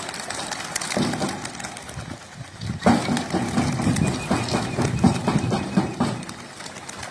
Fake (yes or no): no